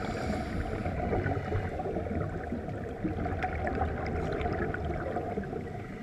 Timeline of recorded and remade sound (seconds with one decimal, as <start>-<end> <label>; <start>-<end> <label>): 0.0-6.0 recorded